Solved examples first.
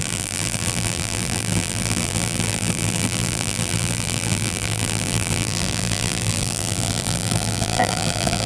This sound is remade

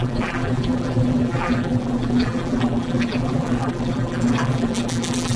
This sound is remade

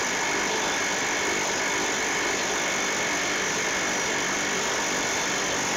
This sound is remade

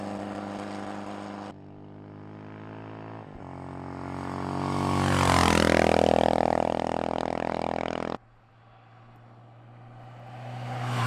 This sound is recorded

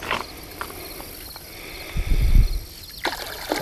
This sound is recorded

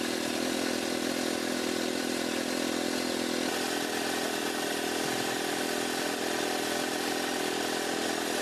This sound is recorded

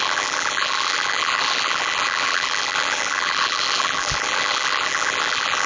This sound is remade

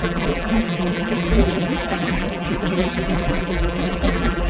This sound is remade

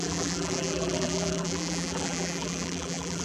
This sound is remade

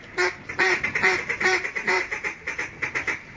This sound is remade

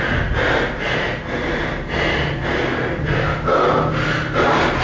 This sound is recorded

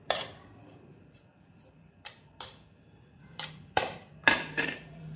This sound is remade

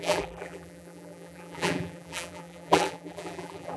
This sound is remade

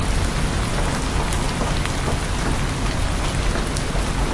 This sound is recorded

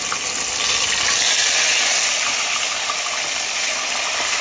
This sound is recorded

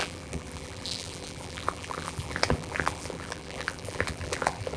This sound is remade